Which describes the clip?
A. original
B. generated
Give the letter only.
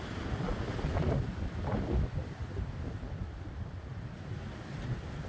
A